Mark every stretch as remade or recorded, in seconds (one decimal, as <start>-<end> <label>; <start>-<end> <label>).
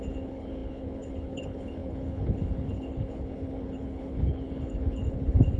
0.0-5.6 remade